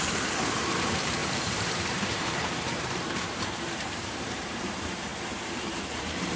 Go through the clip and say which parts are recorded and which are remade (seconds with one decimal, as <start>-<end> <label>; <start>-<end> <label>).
0.0-5.1 remade; 5.1-5.6 recorded; 5.6-6.4 remade